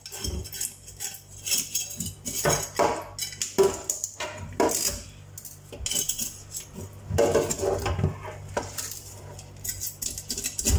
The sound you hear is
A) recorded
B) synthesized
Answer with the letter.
A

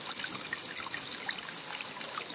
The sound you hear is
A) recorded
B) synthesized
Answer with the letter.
A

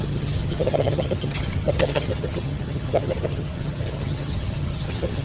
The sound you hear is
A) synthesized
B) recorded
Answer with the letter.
A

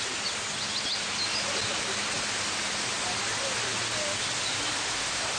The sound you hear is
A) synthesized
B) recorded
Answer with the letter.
B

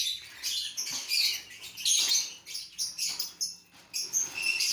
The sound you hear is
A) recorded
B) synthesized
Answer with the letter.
A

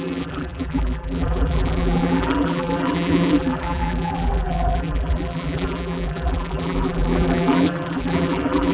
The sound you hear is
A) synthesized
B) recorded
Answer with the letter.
A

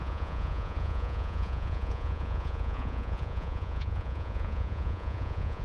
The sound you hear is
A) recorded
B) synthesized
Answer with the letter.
B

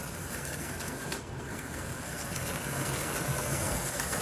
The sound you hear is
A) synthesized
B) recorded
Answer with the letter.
A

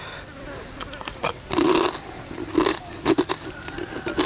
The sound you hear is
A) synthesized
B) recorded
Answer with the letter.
B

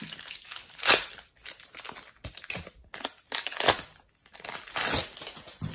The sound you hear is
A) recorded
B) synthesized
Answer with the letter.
A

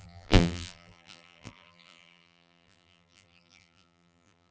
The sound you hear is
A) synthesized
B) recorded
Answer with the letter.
A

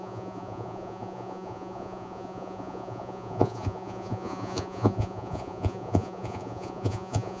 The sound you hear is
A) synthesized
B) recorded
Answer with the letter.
A